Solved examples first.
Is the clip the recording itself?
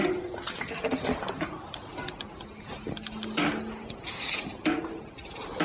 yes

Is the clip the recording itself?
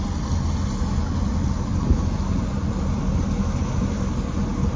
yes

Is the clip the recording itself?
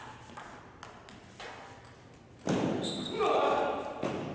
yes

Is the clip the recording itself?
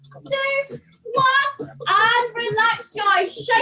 yes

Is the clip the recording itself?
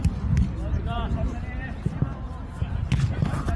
yes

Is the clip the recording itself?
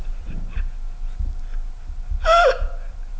yes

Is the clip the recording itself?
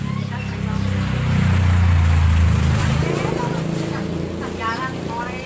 yes